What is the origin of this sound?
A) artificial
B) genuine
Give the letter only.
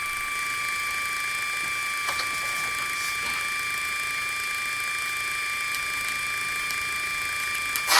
B